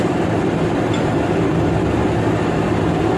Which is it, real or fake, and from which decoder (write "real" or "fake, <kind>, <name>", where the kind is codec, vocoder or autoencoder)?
fake, vocoder, BigVGAN v2